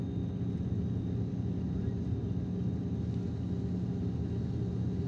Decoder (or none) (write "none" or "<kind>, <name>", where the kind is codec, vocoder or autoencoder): none